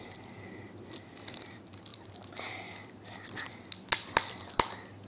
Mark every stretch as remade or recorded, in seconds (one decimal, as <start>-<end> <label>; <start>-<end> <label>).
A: 0.0-5.1 recorded